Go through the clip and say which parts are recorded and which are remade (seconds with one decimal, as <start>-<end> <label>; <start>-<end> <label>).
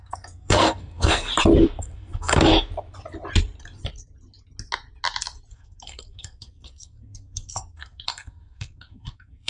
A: 0.0-1.3 remade; 1.3-1.8 recorded; 1.8-2.5 remade; 2.5-5.5 recorded; 5.5-9.5 remade